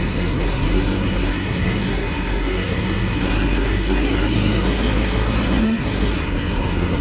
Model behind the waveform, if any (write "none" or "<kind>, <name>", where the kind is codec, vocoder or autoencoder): codec, SNAC